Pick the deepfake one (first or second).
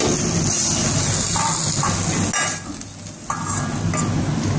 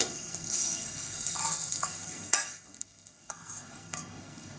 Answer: second